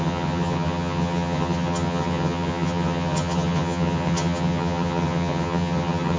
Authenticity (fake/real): fake